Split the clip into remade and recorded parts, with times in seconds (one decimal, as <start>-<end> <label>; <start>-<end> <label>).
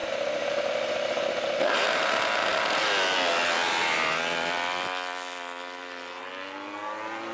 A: 0.0-2.0 remade; 2.0-7.3 recorded